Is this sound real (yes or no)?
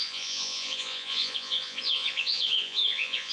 no